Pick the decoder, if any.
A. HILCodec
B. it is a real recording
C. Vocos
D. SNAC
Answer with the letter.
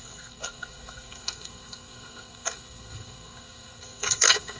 D